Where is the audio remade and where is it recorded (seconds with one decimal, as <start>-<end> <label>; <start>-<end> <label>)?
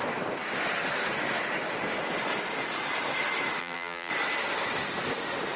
0.0-3.6 recorded; 3.6-4.1 remade; 4.1-5.6 recorded